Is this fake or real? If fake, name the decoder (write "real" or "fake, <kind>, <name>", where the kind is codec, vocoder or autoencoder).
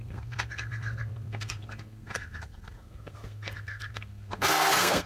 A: fake, codec, SNAC